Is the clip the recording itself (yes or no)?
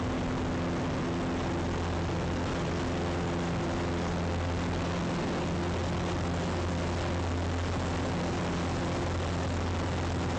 yes